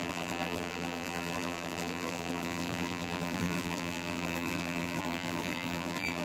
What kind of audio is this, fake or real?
fake